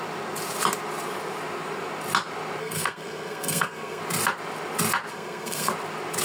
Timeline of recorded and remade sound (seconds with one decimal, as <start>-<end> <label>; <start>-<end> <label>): 0.0-2.6 recorded; 2.6-4.0 remade; 4.0-5.1 recorded; 5.1-5.7 remade; 5.7-6.2 recorded